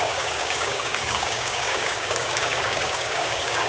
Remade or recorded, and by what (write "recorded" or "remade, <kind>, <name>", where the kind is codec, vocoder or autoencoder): remade, codec, DAC